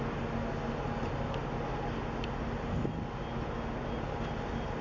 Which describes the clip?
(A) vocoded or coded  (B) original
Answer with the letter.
B